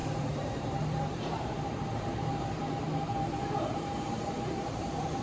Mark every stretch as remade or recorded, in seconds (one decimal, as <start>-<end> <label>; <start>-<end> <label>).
0.0-2.1 remade; 2.1-3.6 recorded; 3.6-5.2 remade